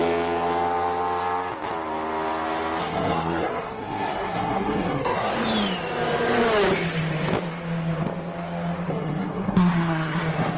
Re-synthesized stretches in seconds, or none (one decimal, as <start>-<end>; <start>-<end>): 2.8-5.3; 8.9-10.6